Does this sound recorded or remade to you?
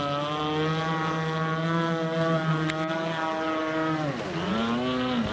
recorded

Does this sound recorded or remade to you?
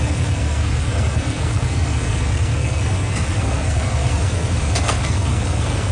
remade